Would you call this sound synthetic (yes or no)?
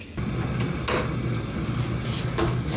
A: no